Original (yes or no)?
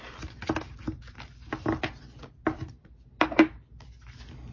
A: yes